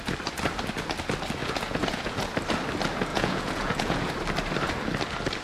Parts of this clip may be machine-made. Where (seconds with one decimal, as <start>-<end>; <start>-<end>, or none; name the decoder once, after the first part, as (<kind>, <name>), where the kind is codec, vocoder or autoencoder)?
1.4-2.2 (vocoder, Vocos); 3.1-4.1